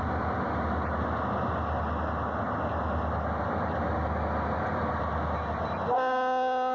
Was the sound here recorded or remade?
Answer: recorded